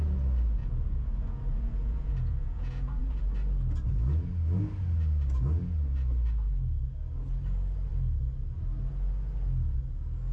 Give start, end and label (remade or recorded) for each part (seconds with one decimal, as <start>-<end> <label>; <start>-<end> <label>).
0.0-0.6 recorded; 0.6-3.3 remade; 3.3-10.3 recorded